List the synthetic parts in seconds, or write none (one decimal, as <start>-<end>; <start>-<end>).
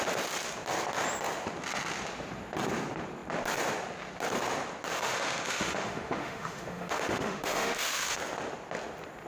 4.9-8.2